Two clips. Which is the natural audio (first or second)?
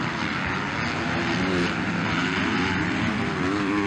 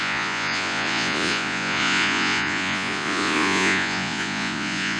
first